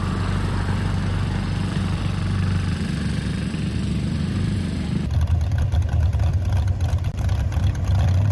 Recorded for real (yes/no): no